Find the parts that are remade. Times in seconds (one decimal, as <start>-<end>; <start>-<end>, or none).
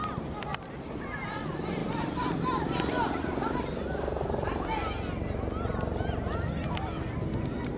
none